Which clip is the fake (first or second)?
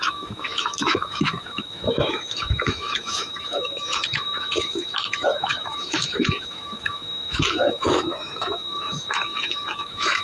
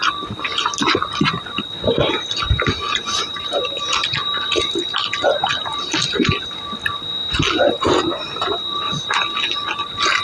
first